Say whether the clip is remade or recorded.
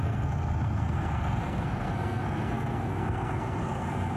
remade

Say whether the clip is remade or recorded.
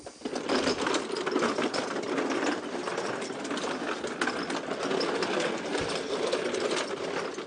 recorded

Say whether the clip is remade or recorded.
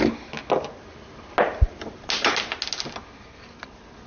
recorded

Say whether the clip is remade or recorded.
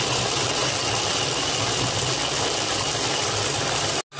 recorded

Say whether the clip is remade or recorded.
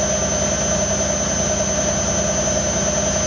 recorded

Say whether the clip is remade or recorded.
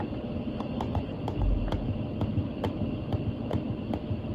remade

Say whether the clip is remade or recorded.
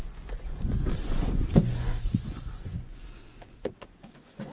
remade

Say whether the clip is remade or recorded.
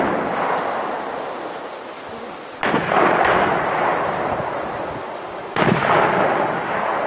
recorded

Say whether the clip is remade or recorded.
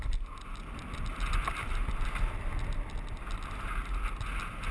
recorded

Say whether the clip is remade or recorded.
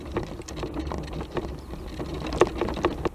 recorded